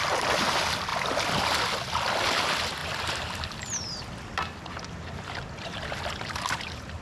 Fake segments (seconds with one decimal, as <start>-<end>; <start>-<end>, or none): none